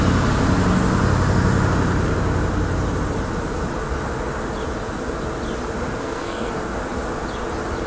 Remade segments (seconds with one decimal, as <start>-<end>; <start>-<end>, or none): 6.0-6.5